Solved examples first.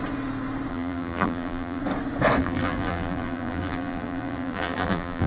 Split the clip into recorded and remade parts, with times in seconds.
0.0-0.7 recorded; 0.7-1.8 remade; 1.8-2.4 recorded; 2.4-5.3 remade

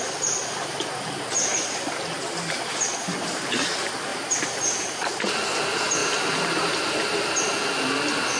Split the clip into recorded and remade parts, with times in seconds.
0.0-4.1 recorded; 4.1-5.1 remade; 5.1-6.0 recorded; 6.0-7.5 remade; 7.5-8.4 recorded